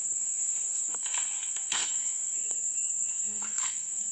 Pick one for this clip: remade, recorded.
remade